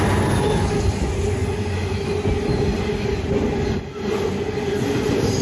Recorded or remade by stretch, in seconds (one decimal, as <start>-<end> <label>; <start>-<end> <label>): 0.0-5.4 recorded